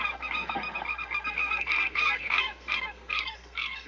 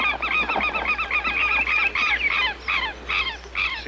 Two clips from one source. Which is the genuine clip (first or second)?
second